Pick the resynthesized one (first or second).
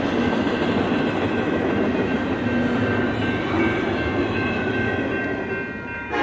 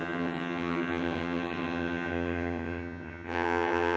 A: second